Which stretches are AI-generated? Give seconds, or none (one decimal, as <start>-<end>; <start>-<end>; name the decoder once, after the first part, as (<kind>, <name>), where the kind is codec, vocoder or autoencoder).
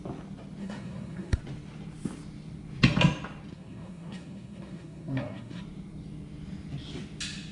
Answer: 0.6-1.4 (codec, SNAC); 3.5-5.6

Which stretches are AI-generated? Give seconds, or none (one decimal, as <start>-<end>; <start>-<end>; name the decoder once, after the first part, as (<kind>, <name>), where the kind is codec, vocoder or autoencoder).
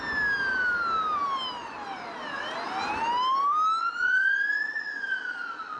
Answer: 3.8-5.8 (vocoder, Vocos)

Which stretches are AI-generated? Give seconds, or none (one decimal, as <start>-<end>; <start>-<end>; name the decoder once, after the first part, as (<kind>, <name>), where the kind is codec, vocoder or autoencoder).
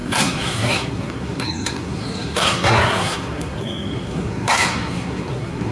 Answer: 0.0-5.7 (codec, SNAC)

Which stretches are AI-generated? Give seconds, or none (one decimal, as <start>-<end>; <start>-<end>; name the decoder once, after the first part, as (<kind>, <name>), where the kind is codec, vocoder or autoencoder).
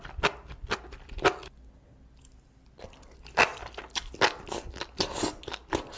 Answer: none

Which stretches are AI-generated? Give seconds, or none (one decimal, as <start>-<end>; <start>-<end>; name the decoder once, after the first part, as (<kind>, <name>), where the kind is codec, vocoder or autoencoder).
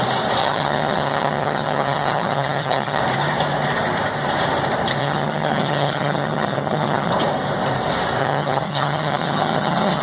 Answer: 0.4-3.0 (vocoder, HiFi-GAN); 5.0-7.1; 8.2-10.0